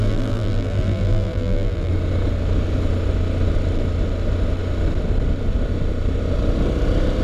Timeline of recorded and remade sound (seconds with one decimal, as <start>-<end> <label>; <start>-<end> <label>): 0.0-1.9 remade; 1.9-7.2 recorded